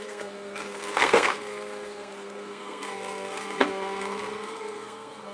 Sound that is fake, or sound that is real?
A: fake